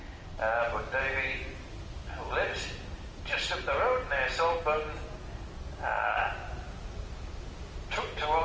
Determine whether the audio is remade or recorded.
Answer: recorded